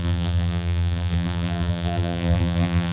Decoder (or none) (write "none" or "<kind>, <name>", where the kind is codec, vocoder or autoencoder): vocoder, BigVGAN v2